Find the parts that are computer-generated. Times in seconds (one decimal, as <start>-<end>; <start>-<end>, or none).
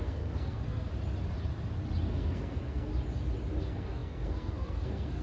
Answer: 0.0-0.9; 2.1-2.9; 3.6-5.2